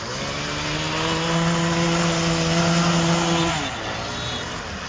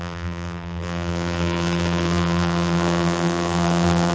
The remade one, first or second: second